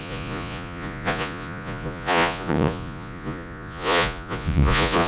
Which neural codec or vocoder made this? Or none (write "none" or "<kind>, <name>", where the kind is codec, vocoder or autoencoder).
vocoder, Vocos